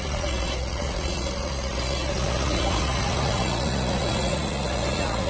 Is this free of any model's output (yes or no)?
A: no